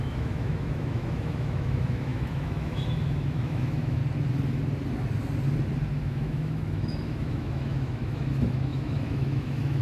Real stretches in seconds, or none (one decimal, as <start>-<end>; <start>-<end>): 4.0-6.0